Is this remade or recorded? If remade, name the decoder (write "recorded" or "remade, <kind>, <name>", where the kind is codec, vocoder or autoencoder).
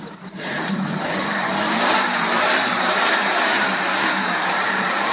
remade, vocoder, BigVGAN v2